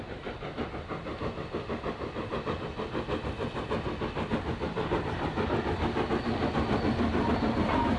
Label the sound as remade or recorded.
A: recorded